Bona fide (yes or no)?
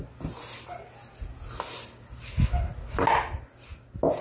yes